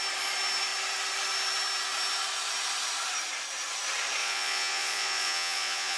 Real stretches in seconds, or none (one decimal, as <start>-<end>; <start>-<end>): 0.0-4.2